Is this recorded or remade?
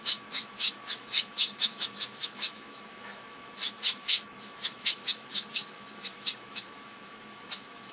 remade